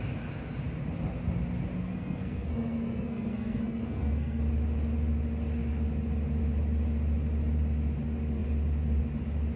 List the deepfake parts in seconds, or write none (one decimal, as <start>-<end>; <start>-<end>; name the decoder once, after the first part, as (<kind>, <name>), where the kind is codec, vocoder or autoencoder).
1.8-4.4 (codec, SNAC)